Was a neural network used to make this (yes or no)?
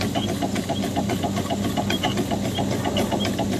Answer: no